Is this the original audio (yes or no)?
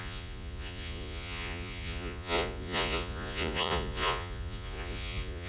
no